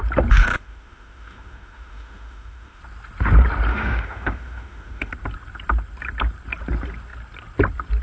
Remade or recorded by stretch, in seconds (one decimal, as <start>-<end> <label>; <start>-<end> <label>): 0.0-0.4 recorded; 0.4-2.8 remade; 2.8-3.7 recorded; 3.7-5.1 remade; 5.1-8.0 recorded